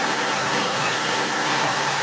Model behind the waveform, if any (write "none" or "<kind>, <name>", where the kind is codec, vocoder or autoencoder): codec, SNAC